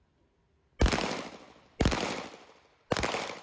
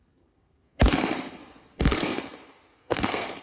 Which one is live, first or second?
first